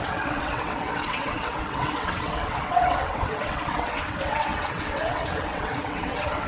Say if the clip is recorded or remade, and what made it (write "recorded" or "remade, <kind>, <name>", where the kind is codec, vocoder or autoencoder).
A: remade, vocoder, WaveNeXt